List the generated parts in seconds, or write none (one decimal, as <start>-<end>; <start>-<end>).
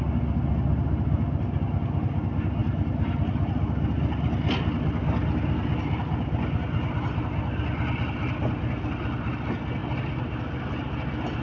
2.6-3.1; 9.8-10.6